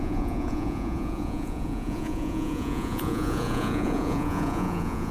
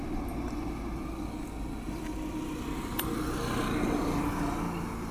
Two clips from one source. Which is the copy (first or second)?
first